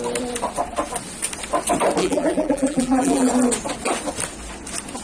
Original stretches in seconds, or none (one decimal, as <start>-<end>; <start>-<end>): 0.0-2.0; 3.3-5.0

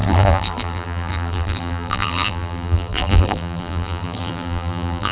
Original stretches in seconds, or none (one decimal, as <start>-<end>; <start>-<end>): none

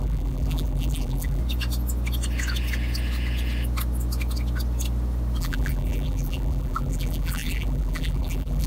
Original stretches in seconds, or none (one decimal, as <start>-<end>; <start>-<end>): 1.4-5.4

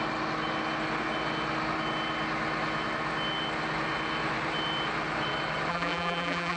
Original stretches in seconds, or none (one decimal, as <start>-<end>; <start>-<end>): 0.0-5.7

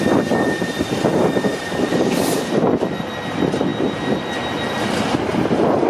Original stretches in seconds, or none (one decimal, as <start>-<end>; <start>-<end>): 0.0-3.7; 4.2-5.9